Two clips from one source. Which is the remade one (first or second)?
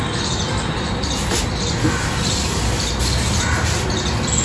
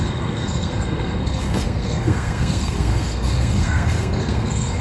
second